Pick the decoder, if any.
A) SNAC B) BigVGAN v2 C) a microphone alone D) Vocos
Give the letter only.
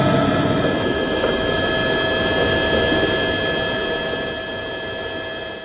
C